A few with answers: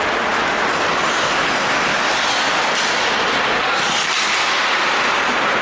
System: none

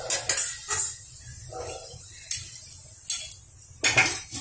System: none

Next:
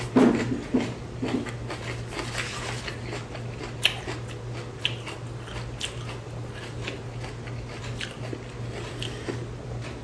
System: none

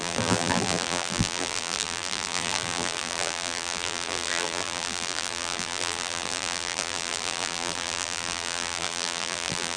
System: vocoder, BigVGAN v2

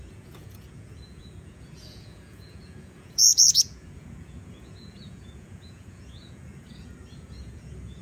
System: vocoder, Vocos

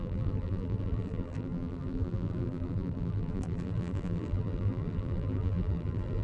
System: vocoder, BigVGAN v2